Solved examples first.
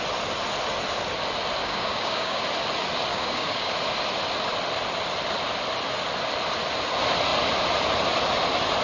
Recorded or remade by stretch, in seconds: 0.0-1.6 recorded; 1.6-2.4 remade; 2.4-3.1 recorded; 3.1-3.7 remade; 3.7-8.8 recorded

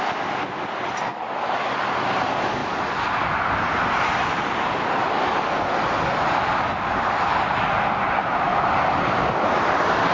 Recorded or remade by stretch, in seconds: 0.0-10.1 recorded

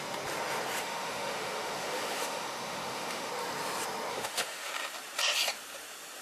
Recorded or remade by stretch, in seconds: 0.0-0.8 recorded; 0.8-3.3 remade; 3.3-4.1 recorded; 4.1-4.7 remade; 4.7-6.2 recorded

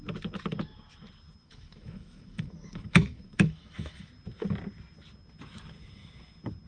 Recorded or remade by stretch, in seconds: 0.0-1.4 recorded; 1.4-4.1 remade; 4.1-6.7 recorded